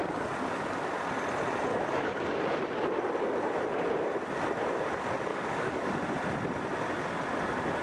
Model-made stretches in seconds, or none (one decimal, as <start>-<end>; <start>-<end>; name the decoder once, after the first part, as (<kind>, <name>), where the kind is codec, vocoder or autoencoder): 1.7-2.4 (codec, DAC); 5.3-5.9